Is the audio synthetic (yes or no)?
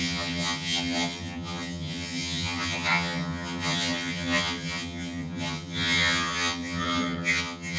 yes